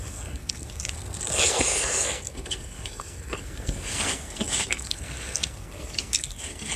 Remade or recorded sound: remade